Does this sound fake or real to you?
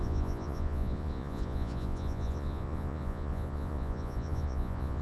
fake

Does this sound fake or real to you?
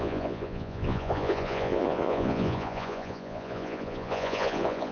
fake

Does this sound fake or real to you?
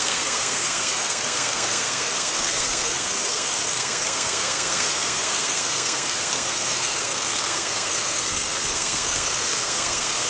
fake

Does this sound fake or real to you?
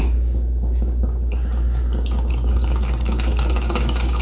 fake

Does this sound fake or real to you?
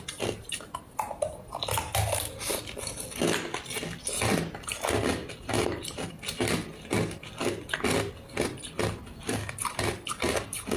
real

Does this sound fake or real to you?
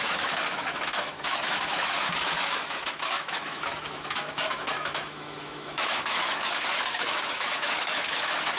fake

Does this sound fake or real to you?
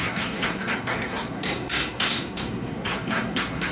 fake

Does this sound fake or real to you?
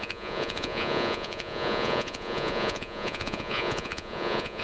fake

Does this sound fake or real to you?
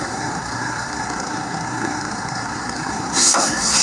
fake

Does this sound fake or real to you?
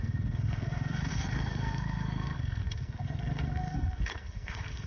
fake